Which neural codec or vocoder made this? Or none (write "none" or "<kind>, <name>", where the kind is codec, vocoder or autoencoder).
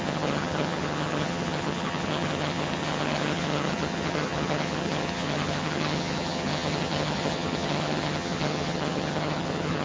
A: vocoder, HiFi-GAN